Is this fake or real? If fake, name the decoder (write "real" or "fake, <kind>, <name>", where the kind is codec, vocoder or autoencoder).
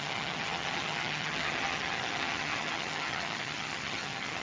fake, vocoder, HiFi-GAN